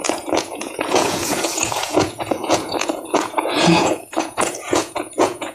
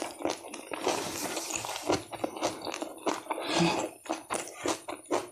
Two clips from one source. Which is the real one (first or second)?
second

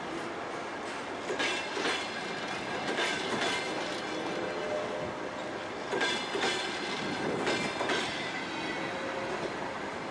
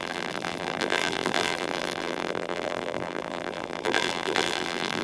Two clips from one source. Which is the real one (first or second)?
first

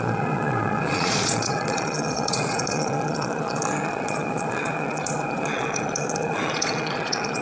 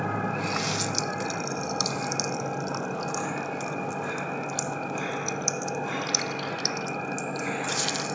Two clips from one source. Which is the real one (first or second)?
second